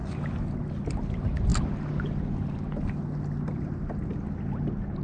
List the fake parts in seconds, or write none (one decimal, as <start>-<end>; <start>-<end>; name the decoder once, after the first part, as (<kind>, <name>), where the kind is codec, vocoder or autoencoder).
none